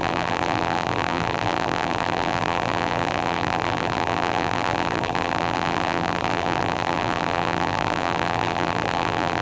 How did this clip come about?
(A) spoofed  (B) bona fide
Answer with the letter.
A